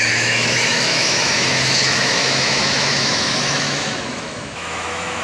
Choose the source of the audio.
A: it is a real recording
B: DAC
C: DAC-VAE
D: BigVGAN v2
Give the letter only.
C